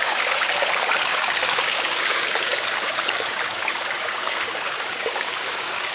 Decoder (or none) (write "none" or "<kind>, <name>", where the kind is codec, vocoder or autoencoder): codec, DAC